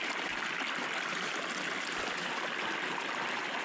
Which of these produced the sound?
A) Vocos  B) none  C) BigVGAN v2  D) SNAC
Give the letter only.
B